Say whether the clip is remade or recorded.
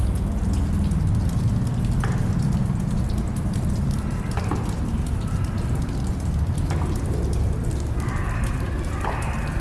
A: recorded